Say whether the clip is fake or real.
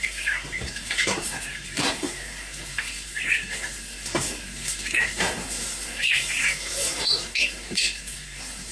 fake